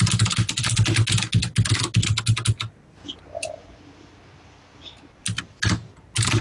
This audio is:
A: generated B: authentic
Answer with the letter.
B